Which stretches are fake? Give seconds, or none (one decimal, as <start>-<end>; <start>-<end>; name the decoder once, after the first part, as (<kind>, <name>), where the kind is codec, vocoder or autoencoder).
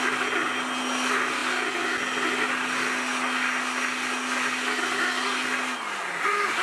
none